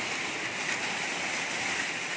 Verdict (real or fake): real